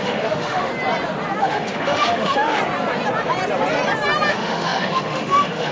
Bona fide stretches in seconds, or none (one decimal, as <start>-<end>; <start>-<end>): 0.7-1.4; 2.6-4.3